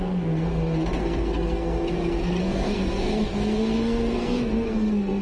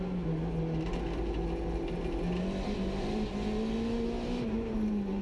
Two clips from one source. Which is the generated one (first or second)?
first